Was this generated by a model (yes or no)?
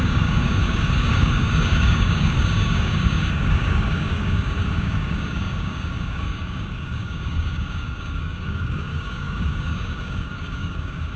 yes